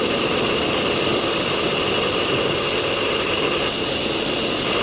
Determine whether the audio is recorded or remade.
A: recorded